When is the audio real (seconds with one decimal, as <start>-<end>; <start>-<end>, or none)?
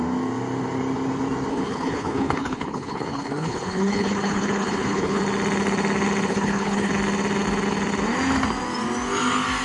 0.0-1.5; 5.2-6.3; 6.9-9.6